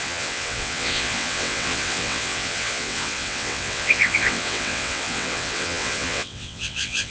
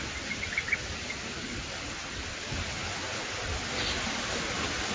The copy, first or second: first